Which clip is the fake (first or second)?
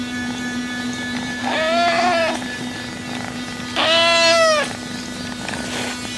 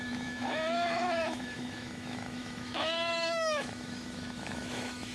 second